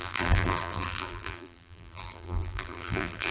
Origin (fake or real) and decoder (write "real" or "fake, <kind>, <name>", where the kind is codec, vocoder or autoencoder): fake, vocoder, BigVGAN v2